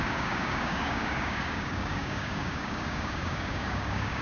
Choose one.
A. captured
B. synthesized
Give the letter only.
B